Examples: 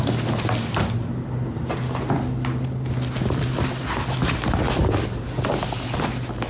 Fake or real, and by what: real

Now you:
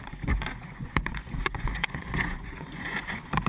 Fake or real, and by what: fake, vocoder, Vocos